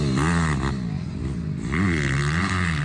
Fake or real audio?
real